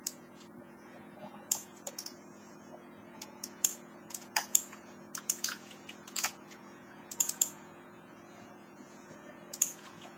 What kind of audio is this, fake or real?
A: fake